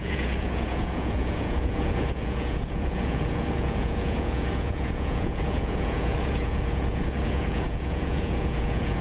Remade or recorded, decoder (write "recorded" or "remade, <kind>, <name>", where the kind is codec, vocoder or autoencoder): remade, vocoder, Vocos